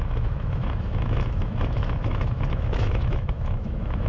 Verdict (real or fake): fake